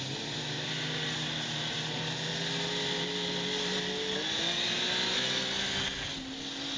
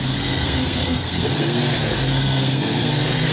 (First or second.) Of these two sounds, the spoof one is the second